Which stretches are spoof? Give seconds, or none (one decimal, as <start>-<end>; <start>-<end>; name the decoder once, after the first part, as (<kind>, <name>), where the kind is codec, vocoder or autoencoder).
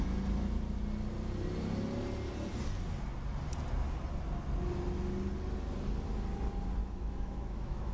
6.8-7.9 (autoencoder, DAC-VAE)